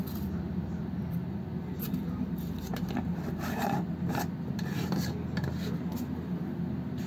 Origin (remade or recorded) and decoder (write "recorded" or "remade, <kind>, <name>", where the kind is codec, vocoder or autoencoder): recorded